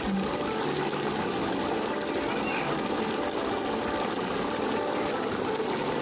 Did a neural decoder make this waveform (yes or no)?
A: no